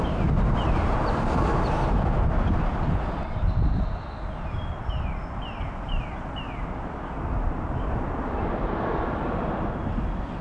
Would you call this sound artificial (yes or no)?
no